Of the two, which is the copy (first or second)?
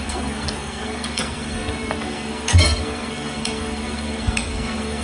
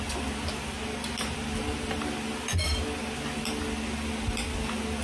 first